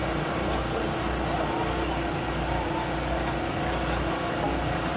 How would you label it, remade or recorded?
recorded